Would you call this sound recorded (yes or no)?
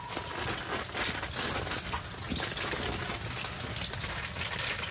yes